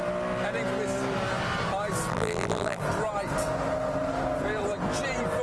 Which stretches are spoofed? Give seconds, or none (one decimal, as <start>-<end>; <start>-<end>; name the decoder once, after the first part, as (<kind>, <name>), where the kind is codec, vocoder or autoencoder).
2.1-2.8 (vocoder, BigVGAN v2)